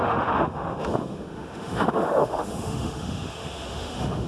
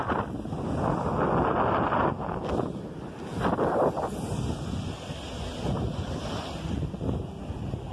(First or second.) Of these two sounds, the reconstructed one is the first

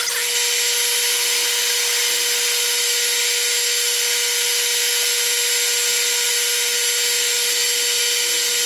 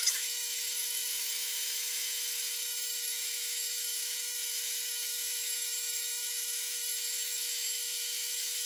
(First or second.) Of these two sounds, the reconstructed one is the second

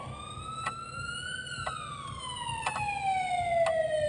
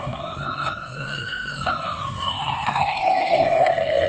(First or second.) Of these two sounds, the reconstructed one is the second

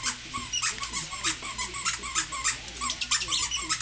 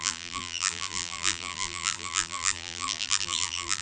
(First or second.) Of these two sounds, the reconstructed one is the second